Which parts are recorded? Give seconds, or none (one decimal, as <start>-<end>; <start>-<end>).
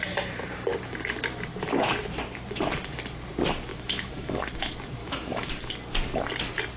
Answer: 0.0-3.7; 4.4-5.0; 5.5-6.8